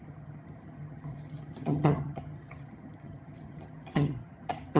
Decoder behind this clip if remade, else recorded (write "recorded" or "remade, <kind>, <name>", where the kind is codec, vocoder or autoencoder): remade, vocoder, HiFi-GAN